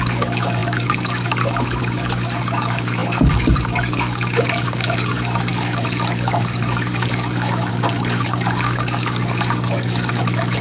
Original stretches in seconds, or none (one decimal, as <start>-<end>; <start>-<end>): none